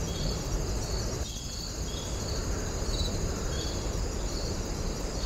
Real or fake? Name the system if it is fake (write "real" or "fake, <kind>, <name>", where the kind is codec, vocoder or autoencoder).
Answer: real